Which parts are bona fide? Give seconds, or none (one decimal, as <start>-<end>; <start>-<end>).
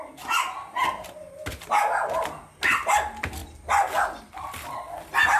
0.0-5.4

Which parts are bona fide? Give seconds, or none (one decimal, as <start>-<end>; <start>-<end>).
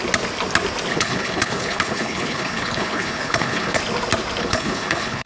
0.0-0.9; 3.8-4.4